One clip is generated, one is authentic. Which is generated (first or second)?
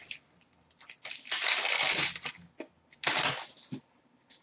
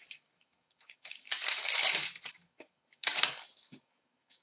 second